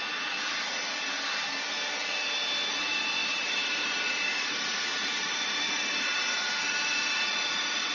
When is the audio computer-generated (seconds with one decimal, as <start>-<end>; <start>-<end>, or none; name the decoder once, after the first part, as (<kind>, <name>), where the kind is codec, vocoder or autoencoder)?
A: 0.0-1.1 (vocoder, Vocos); 2.8-7.9